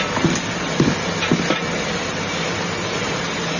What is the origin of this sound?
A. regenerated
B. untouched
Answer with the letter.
B